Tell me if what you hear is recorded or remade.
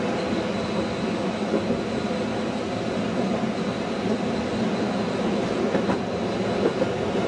recorded